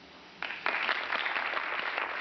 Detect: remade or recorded recorded